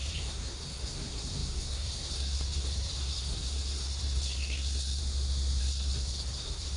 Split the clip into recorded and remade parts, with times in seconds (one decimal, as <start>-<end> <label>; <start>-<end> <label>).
0.0-5.0 remade; 5.0-5.6 recorded; 5.6-6.8 remade